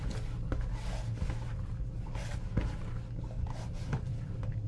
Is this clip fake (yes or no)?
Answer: no